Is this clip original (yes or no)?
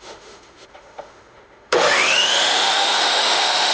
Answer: no